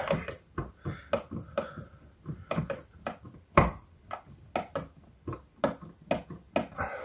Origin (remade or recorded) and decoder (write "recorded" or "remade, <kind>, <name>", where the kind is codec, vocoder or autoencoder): recorded